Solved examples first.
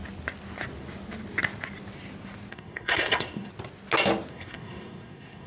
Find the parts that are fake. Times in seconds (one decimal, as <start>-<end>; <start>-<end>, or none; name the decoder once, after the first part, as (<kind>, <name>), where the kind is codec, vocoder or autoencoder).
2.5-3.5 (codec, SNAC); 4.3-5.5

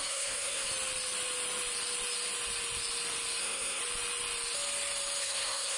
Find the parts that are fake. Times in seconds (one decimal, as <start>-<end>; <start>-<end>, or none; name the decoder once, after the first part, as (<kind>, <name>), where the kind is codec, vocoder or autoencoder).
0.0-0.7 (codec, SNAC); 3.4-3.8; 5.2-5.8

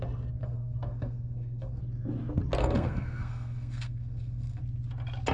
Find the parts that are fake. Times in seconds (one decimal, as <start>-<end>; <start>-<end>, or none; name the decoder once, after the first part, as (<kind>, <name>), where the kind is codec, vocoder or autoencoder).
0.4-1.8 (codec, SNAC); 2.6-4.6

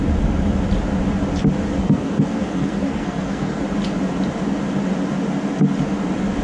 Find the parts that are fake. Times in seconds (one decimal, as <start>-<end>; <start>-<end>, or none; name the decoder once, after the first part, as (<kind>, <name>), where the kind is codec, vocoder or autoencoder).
1.8-3.6 (codec, SNAC)

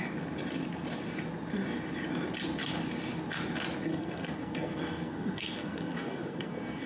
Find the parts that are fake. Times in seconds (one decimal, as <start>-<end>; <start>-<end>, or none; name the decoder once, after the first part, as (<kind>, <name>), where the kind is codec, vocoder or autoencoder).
3.9-6.9 (codec, SNAC)

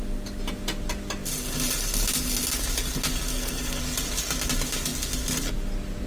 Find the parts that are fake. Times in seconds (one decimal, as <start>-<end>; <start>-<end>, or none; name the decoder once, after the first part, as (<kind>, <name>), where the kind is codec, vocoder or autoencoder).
3.3-3.8 (codec, SNAC)